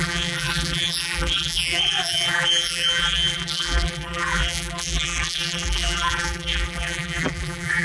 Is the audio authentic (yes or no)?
no